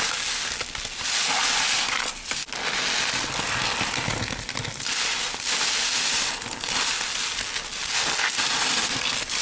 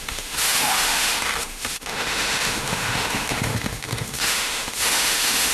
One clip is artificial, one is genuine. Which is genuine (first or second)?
first